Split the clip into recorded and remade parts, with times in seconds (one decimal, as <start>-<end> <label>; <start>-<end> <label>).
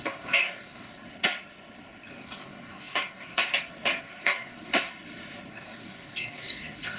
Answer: 0.0-0.9 remade; 0.9-2.1 recorded; 2.1-3.5 remade; 3.5-4.0 recorded; 4.0-4.9 remade; 4.9-5.5 recorded; 5.5-7.0 remade